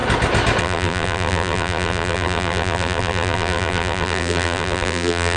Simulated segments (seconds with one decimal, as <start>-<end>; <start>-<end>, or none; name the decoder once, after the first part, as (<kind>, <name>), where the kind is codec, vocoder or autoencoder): 0.6-5.4 (vocoder, BigVGAN v2)